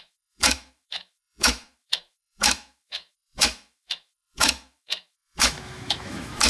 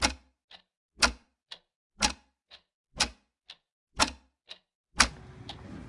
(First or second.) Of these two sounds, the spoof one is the first